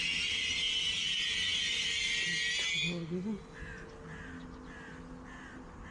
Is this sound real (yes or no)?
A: yes